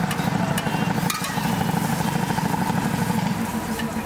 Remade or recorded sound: recorded